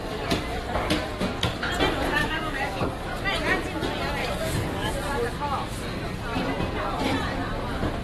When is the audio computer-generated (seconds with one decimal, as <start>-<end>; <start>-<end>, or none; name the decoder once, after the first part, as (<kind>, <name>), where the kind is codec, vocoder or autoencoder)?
2.2-3.2 (codec, DAC); 4.2-4.9